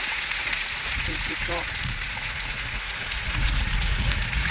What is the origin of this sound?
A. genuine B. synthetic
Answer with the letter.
B